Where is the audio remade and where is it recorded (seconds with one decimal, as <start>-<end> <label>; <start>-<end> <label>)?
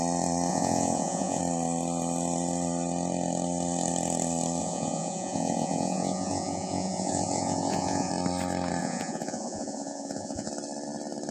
0.0-0.5 recorded; 0.5-1.4 remade; 1.4-4.6 recorded; 4.6-8.1 remade; 8.1-8.8 recorded; 8.8-10.5 remade; 10.5-11.3 recorded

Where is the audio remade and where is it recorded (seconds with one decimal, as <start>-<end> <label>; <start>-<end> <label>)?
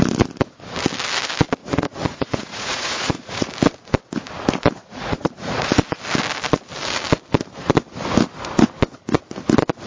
0.0-1.6 recorded; 1.6-3.5 remade; 3.5-4.8 recorded; 4.8-5.7 remade; 5.7-9.9 recorded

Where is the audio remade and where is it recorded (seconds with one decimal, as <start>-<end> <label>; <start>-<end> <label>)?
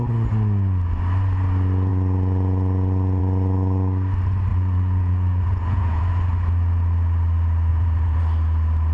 0.0-4.5 recorded; 4.5-6.0 remade; 6.0-7.7 recorded; 7.7-8.2 remade; 8.2-8.9 recorded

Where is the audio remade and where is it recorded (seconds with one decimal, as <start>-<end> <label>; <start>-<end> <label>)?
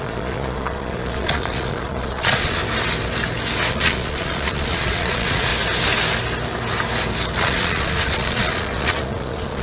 0.0-2.6 remade; 2.6-3.7 recorded; 3.7-5.5 remade; 5.5-7.4 recorded; 7.4-9.6 remade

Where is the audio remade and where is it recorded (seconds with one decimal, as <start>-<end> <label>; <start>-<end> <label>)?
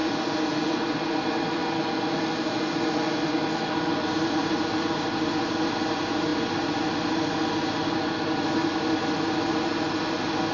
0.0-10.5 recorded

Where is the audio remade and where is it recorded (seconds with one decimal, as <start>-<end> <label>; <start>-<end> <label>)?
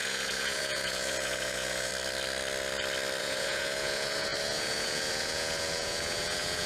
0.0-1.9 remade; 1.9-3.2 recorded; 3.2-6.7 remade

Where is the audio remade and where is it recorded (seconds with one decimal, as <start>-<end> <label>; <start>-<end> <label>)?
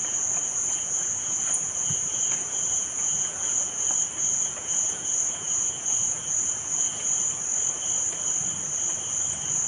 0.0-3.9 remade; 3.9-4.3 recorded; 4.3-7.2 remade; 7.2-9.7 recorded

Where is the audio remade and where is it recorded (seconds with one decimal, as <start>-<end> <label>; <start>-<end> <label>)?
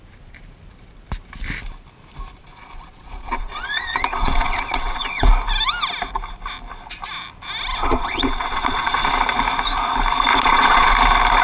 0.0-2.4 recorded; 2.4-5.3 remade; 5.3-7.7 recorded; 7.7-9.1 remade; 9.1-10.3 recorded; 10.3-10.9 remade; 10.9-11.4 recorded